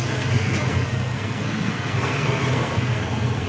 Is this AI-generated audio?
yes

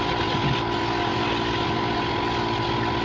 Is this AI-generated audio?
no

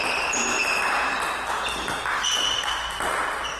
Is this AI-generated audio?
no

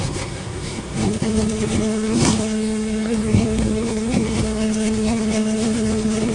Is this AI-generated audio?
yes